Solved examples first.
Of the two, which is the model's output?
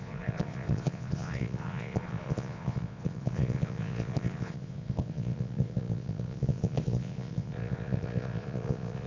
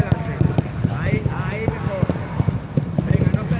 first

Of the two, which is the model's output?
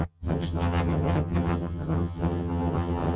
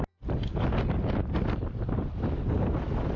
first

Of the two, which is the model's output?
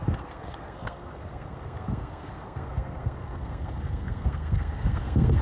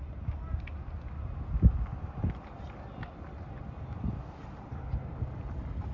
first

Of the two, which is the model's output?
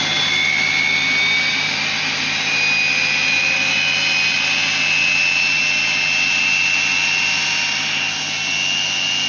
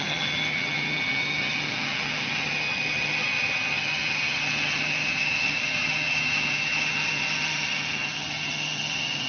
second